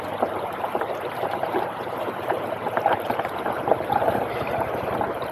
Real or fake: fake